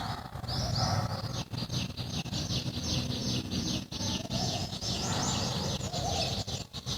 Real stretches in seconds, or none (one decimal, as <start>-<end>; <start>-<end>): 0.0-3.2; 5.2-7.0